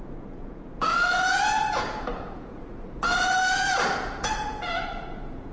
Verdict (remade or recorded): remade